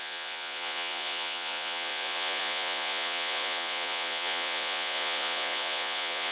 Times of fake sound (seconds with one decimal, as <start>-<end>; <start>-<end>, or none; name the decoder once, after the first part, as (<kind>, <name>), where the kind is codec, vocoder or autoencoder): 0.0-6.3 (vocoder, Vocos)